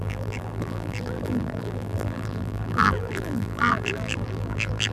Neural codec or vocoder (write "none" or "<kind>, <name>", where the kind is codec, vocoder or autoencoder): vocoder, BigVGAN v2